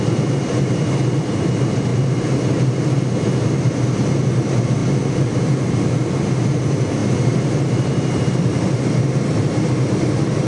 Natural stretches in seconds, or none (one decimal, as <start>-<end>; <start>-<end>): 1.9-4.3; 4.8-5.5